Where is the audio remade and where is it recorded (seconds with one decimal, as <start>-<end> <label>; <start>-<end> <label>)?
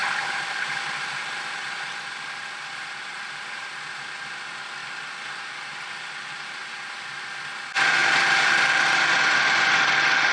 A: 0.0-3.7 remade; 3.7-4.8 recorded; 4.8-7.2 remade; 7.2-8.0 recorded; 8.0-10.3 remade